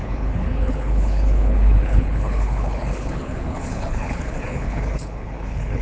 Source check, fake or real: fake